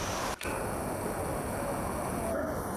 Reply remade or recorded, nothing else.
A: recorded